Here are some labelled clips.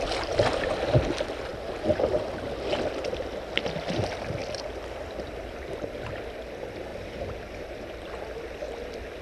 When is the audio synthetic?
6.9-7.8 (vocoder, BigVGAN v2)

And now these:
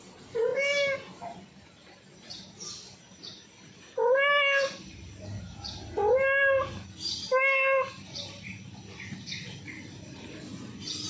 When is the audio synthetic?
none